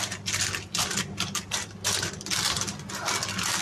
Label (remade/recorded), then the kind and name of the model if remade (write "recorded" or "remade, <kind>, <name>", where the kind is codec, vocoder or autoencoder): recorded